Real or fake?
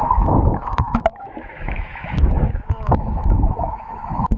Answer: fake